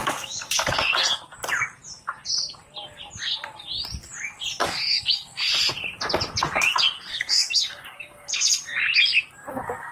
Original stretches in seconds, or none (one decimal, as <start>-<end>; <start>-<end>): 1.2-4.6; 5.5-7.1; 8.5-9.9